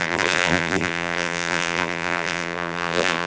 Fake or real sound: fake